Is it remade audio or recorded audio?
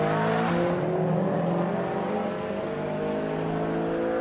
recorded